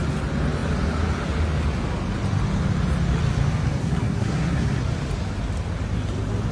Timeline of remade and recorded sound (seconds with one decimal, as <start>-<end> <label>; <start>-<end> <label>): 0.0-3.8 recorded; 3.8-4.8 remade; 4.8-6.5 recorded